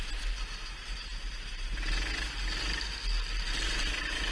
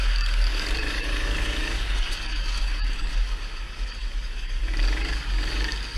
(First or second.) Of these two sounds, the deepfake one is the second